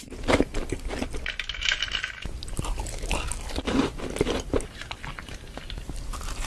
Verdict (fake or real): real